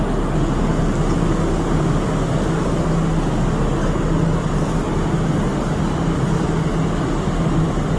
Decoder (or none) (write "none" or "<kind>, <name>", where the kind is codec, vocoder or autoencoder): none